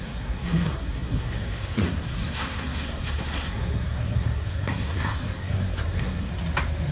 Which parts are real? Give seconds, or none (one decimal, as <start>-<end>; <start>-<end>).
6.3-6.9